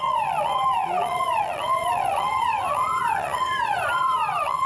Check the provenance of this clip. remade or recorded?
remade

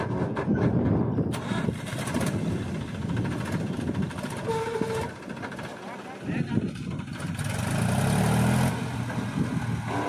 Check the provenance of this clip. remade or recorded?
recorded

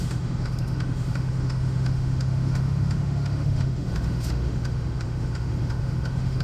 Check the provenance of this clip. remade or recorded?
remade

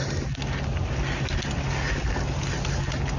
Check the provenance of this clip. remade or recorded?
recorded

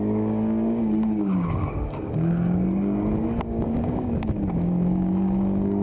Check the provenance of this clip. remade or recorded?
remade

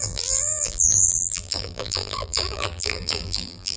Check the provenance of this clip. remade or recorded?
remade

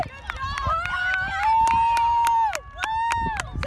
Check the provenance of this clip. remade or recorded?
recorded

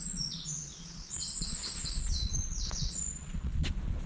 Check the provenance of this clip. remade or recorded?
remade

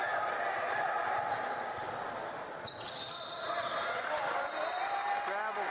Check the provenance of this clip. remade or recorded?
recorded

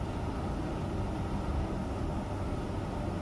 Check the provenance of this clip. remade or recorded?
recorded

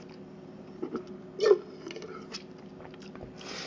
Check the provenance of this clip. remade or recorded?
recorded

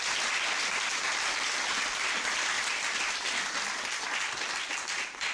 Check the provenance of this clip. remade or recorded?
recorded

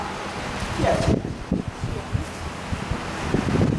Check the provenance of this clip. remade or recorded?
recorded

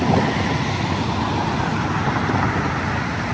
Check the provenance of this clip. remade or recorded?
recorded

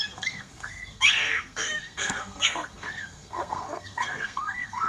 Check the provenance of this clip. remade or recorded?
remade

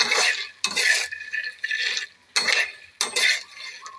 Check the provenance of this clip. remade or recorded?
recorded